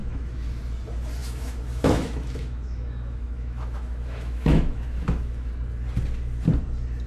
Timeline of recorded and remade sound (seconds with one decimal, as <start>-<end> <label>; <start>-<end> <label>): 0.0-0.6 remade; 0.6-1.2 recorded; 1.2-5.5 remade; 5.5-7.1 recorded